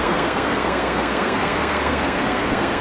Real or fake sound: fake